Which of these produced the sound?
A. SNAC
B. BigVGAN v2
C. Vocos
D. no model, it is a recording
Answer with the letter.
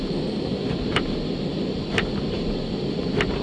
D